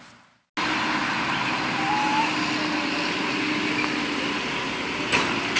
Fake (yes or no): no